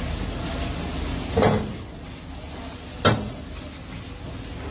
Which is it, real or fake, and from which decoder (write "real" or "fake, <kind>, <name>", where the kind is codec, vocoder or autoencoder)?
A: real